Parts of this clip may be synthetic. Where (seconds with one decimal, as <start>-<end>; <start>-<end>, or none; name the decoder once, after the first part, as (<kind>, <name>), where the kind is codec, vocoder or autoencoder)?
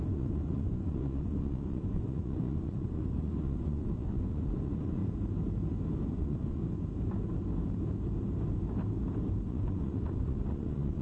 0.0-5.0 (vocoder, Vocos); 6.1-6.6; 9.5-11.0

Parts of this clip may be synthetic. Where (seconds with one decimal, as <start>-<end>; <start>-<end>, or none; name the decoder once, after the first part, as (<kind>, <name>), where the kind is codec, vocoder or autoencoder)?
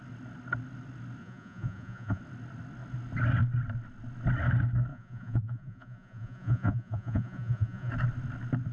1.2-2.2 (vocoder, Vocos); 4.9-7.9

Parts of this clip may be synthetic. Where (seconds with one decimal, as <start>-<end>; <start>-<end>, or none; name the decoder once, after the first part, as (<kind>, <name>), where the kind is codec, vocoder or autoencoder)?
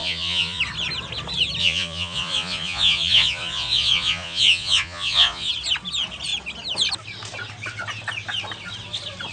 0.0-0.6 (vocoder, Vocos); 1.6-5.5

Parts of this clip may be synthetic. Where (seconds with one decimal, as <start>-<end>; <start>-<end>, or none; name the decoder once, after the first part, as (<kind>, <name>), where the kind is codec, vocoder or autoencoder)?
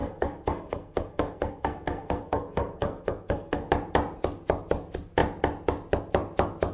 0.0-3.7 (codec, SNAC)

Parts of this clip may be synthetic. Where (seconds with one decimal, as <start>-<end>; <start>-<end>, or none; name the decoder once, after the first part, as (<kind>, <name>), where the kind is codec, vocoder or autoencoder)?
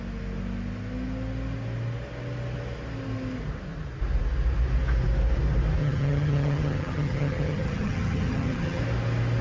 5.8-8.8 (vocoder, HiFi-GAN)